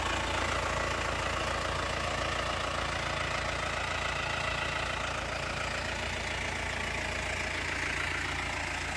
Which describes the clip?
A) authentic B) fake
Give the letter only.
A